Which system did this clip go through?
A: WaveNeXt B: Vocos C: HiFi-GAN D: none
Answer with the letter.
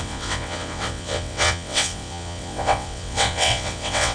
A